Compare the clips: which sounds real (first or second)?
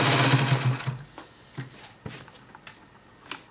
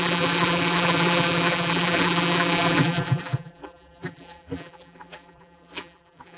first